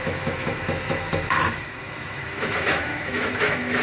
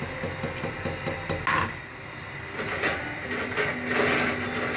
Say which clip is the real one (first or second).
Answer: second